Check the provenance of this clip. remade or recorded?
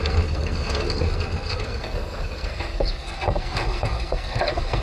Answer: remade